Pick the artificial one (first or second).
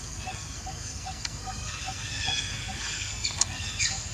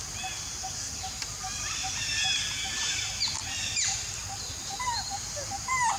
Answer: first